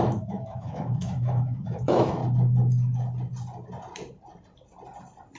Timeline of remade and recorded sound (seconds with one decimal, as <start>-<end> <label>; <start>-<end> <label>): 0.0-2.2 remade; 2.2-5.4 recorded

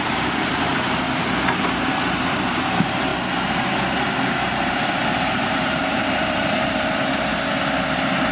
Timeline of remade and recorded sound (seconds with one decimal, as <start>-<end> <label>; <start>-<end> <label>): 0.0-0.7 remade; 0.7-1.6 recorded; 1.6-3.1 remade; 3.1-4.3 recorded; 4.3-7.3 remade; 7.3-8.3 recorded

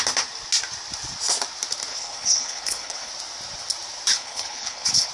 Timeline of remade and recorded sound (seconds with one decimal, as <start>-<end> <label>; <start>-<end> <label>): 0.0-1.9 recorded; 1.9-3.1 remade; 3.1-4.1 recorded; 4.1-5.1 remade

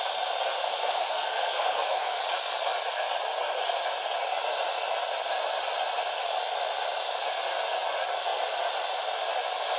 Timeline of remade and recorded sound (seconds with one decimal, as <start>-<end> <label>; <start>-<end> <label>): 0.0-0.6 recorded; 0.6-2.2 remade; 2.2-9.8 recorded

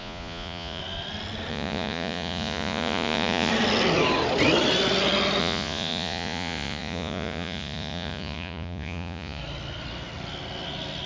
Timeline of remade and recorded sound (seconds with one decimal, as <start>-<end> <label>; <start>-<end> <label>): 0.0-0.8 remade; 0.8-1.5 recorded; 1.5-3.5 remade; 3.5-5.4 recorded; 5.4-9.4 remade; 9.4-11.1 recorded

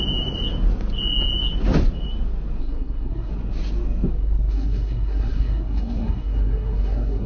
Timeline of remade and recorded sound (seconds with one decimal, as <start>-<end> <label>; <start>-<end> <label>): 0.0-2.6 recorded; 2.6-3.3 remade; 3.3-4.1 recorded; 4.1-7.3 remade

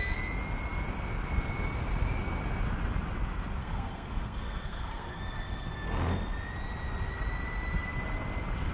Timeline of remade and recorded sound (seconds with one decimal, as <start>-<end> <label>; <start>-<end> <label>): 0.0-3.6 recorded; 3.6-5.7 remade; 5.7-8.7 recorded

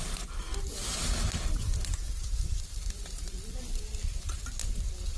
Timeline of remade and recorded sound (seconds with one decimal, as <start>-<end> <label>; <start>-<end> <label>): 0.0-5.2 recorded